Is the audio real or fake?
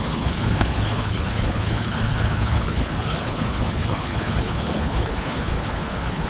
fake